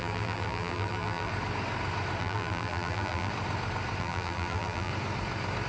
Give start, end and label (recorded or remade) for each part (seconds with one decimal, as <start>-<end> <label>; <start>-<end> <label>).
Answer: 0.0-1.3 remade; 1.3-2.2 recorded; 2.2-3.3 remade; 3.3-4.0 recorded; 4.0-4.9 remade; 4.9-5.7 recorded